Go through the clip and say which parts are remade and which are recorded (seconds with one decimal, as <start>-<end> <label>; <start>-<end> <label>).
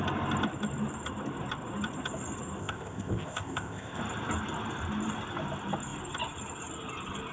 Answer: 0.0-2.6 recorded; 2.6-4.0 remade; 4.0-7.3 recorded